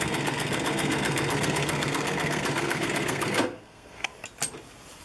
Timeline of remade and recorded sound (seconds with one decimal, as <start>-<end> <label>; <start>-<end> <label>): 0.0-4.1 remade; 4.1-5.0 recorded